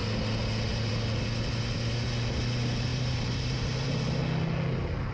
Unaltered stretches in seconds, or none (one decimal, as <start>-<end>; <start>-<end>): 0.0-2.9; 4.2-5.1